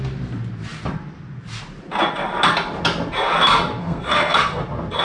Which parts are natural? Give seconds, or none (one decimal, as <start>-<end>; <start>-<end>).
0.0-3.8; 4.6-5.0